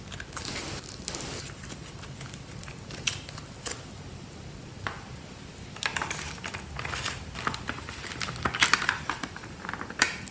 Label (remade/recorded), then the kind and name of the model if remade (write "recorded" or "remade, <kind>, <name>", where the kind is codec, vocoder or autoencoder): recorded